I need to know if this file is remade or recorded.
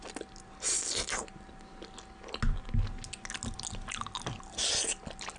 recorded